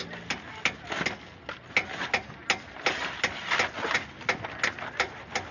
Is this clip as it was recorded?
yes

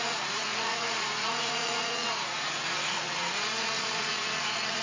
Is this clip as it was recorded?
no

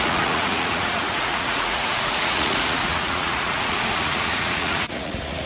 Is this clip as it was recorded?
no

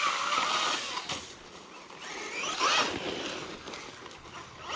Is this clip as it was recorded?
yes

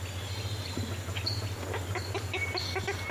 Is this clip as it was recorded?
yes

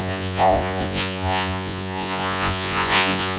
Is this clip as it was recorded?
no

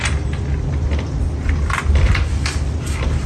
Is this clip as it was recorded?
yes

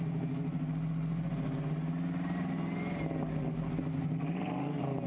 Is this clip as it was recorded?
yes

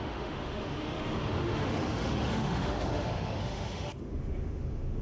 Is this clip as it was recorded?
no